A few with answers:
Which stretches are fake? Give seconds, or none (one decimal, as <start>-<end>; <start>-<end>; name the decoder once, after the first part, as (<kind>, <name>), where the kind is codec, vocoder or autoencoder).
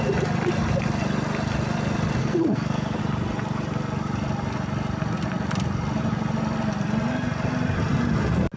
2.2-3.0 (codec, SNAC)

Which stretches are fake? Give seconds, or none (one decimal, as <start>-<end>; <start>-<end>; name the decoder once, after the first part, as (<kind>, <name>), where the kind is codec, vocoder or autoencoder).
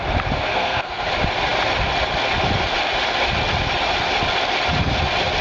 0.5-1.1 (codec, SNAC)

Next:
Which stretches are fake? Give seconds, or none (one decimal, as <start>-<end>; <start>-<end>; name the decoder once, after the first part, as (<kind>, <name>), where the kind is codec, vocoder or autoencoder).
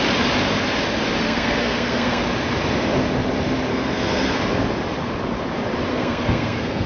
1.2-2.2 (codec, SNAC); 3.7-4.4; 5.9-6.9